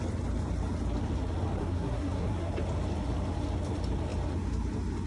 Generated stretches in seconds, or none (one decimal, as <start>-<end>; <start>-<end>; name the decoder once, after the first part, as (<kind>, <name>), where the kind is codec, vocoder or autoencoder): 1.6-2.5 (codec, SNAC)